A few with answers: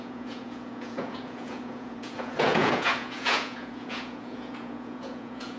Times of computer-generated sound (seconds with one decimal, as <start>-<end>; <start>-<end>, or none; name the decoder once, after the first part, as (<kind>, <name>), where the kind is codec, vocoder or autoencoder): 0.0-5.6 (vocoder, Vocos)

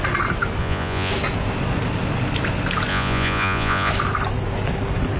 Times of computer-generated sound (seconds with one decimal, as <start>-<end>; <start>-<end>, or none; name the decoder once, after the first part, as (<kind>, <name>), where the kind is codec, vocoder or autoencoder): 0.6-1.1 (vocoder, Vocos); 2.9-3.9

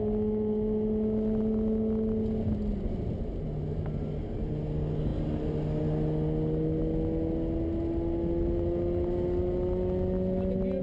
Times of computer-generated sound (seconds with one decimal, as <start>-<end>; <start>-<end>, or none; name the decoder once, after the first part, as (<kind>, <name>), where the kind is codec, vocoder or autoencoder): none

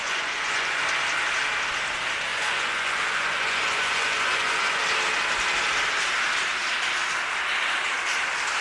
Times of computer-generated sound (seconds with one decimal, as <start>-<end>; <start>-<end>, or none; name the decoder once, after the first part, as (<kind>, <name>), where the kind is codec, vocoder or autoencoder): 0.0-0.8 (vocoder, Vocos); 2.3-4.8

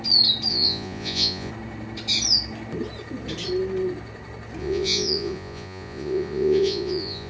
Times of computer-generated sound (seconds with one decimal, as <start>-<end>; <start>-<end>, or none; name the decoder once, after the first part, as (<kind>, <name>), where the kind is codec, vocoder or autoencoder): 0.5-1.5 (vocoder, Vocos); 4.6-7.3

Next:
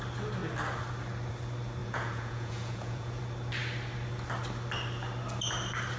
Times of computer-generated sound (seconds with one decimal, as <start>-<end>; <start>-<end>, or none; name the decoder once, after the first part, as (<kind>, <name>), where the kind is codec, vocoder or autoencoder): 1.8-3.2 (vocoder, Vocos)